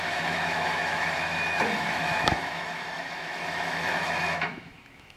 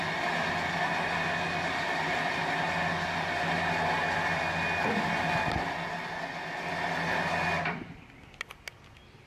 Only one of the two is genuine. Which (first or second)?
second